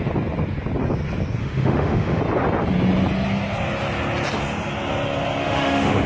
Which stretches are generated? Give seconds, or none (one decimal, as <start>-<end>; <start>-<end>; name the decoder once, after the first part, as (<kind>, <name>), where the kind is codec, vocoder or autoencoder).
1.4-2.2 (autoencoder, DAC-VAE); 5.4-6.1